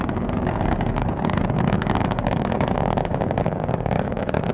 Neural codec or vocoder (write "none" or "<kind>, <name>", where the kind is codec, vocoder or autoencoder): codec, DAC